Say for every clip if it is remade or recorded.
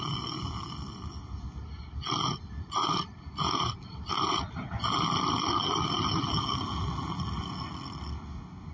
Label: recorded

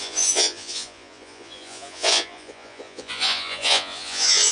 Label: remade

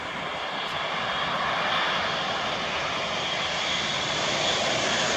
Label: remade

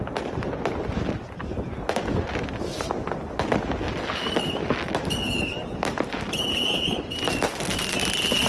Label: recorded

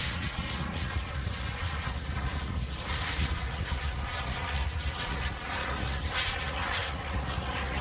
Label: remade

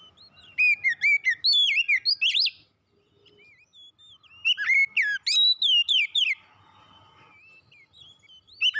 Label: recorded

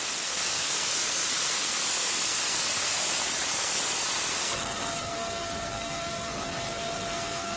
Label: remade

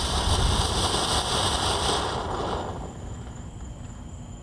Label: recorded